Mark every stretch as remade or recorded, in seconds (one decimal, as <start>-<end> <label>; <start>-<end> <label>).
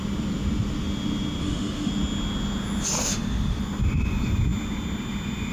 0.0-1.4 recorded; 1.4-1.9 remade; 1.9-3.0 recorded; 3.0-3.6 remade; 3.6-5.5 recorded